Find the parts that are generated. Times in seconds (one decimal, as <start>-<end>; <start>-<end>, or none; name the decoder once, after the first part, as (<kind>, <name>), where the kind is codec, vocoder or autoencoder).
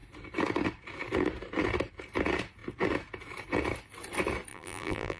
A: 4.5-5.2 (vocoder, BigVGAN v2)